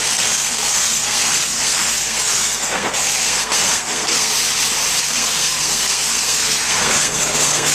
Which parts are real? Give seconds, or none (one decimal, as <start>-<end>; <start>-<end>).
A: 4.3-5.0

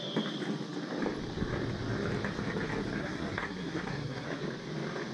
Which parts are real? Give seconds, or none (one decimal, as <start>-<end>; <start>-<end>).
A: 0.0-3.0; 4.4-5.1

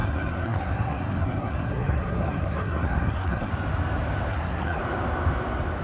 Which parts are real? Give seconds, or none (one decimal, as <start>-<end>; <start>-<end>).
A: 3.5-4.3; 4.8-5.8

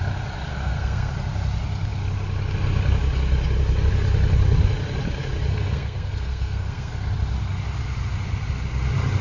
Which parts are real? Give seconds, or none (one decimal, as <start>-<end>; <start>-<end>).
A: 0.0-0.5; 1.1-5.5; 6.9-9.2